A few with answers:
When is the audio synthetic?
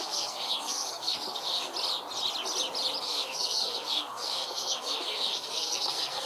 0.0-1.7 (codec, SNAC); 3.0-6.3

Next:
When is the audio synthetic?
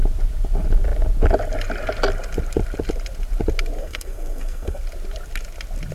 3.8-4.8 (codec, SNAC)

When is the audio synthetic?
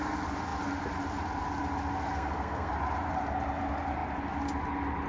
2.1-2.7 (codec, SNAC)